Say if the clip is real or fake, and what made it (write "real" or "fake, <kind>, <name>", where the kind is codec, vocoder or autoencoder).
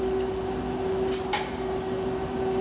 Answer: real